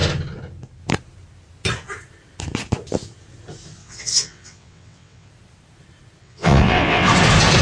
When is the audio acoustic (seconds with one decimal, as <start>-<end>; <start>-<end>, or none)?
0.0-3.8; 5.3-6.2; 7.1-7.6